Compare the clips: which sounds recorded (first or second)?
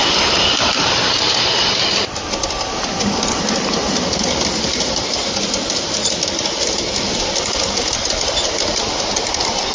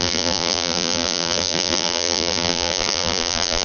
first